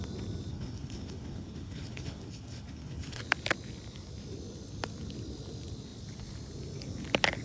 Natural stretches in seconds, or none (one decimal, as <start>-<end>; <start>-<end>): 0.0-0.5; 3.2-7.4

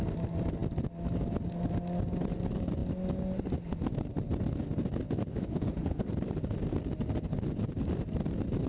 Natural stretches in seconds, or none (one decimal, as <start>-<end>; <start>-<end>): 0.0-5.3; 6.1-8.7

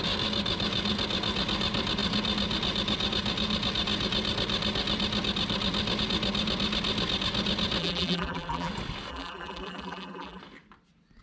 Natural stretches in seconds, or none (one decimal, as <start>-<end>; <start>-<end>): 0.0-7.8; 8.7-9.1; 10.4-11.2

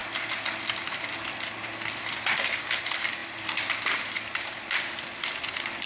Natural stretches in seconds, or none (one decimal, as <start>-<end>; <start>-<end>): 0.0-5.9

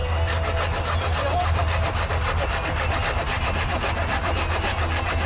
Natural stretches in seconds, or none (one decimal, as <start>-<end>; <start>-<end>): 0.0-5.3

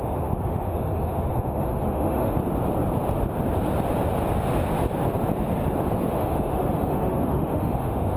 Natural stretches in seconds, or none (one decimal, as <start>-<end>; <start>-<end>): 2.4-5.9